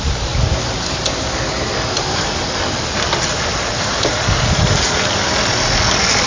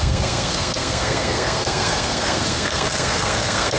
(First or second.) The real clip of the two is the first